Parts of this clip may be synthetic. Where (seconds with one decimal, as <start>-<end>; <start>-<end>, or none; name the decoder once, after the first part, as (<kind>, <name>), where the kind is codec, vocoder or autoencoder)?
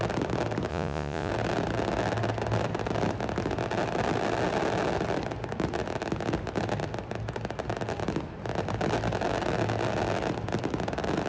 0.7-1.3 (vocoder, Vocos)